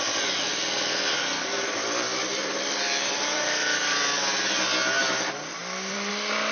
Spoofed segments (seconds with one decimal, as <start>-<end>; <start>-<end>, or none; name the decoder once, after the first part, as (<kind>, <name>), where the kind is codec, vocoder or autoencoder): 0.5-4.4 (vocoder, BigVGAN v2); 5.6-6.1